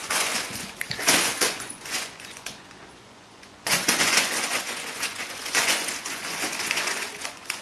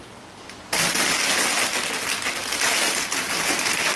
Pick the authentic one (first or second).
second